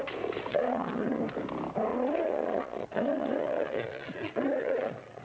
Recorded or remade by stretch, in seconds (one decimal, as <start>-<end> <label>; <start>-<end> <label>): 0.0-0.5 recorded; 0.5-1.2 remade; 1.2-1.9 recorded; 1.9-5.2 remade